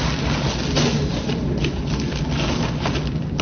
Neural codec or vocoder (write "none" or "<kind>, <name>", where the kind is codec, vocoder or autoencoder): none